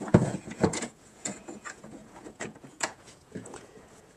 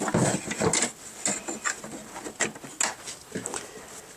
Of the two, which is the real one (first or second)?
second